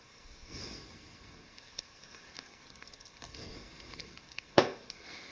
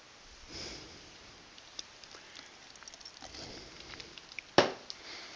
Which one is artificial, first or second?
first